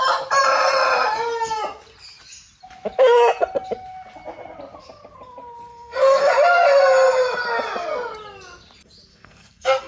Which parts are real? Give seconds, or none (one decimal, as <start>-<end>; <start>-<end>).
0.0-5.7; 6.3-9.1